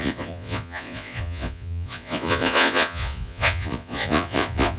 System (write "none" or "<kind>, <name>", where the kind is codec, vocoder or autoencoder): vocoder, Vocos